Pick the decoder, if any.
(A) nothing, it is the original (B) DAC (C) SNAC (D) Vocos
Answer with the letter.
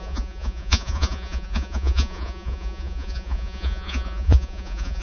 D